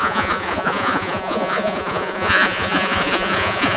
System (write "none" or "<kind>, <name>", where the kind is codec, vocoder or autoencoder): vocoder, Vocos